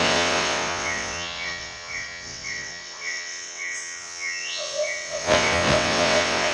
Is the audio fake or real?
fake